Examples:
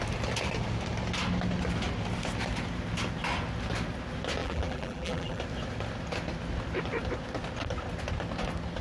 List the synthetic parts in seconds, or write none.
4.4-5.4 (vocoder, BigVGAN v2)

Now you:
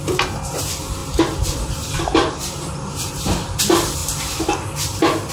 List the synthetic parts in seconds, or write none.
1.0-3.6 (vocoder, BigVGAN v2)

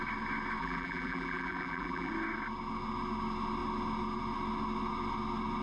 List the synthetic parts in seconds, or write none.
0.6-2.1 (vocoder, BigVGAN v2)

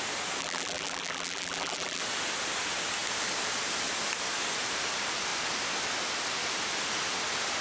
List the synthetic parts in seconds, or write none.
0.4-2.0 (vocoder, BigVGAN v2)